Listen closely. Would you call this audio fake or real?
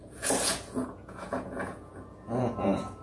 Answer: fake